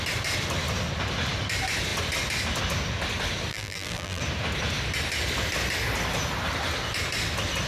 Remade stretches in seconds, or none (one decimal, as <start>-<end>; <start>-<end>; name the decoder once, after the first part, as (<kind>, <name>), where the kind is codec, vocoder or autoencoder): 3.5-4.2 (vocoder, BigVGAN v2)